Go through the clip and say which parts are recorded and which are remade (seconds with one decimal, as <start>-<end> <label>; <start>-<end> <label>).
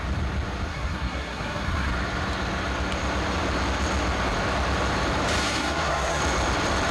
0.0-0.7 recorded; 0.7-1.9 remade; 1.9-5.4 recorded; 5.4-6.2 remade; 6.2-6.9 recorded